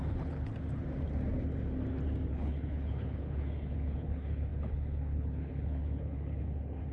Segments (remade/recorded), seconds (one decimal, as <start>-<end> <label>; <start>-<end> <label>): 0.0-0.5 remade; 0.5-2.3 recorded; 2.3-6.9 remade